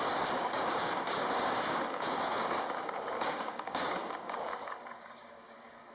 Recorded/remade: remade